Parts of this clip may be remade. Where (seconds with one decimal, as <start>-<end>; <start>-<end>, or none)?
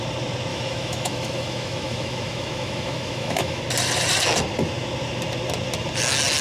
0.5-3.6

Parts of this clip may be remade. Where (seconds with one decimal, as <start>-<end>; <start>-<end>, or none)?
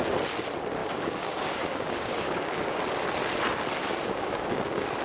0.8-2.8; 3.8-5.0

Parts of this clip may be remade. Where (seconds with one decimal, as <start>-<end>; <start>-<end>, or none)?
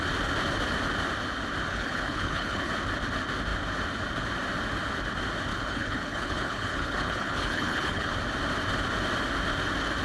1.7-2.7; 5.5-8.1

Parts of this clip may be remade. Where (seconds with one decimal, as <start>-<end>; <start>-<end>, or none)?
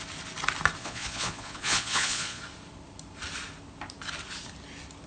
0.8-2.4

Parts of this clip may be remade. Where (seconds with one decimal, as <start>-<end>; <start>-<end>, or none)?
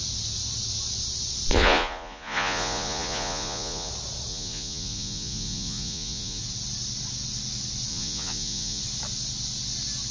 1.5-3.9; 4.3-6.4; 7.9-8.8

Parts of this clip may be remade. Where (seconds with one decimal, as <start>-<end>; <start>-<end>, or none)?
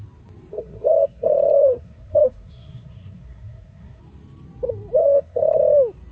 0.5-4.0; 5.0-5.6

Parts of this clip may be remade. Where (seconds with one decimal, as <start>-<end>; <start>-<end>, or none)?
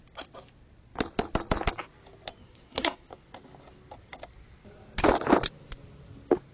2.4-3.1